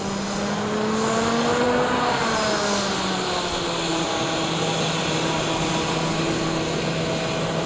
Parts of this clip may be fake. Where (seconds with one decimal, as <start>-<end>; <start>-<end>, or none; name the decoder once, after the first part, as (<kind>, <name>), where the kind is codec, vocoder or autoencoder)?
1.5-2.2 (vocoder, BigVGAN v2); 3.9-6.3